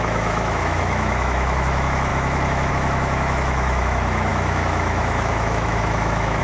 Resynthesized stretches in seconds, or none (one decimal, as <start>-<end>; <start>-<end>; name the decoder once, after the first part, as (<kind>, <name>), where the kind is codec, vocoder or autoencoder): 0.0-6.4 (autoencoder, DAC-VAE)